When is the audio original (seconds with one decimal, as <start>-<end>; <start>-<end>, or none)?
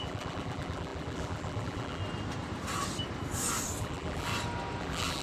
2.0-3.8; 4.3-4.8